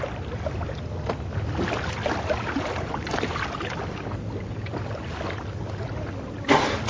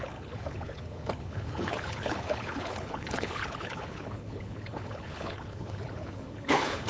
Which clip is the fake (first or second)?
second